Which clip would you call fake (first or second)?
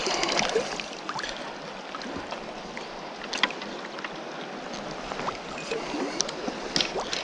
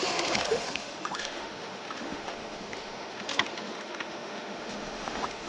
second